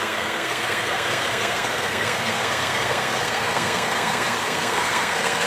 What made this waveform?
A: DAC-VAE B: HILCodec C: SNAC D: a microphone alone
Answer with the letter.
C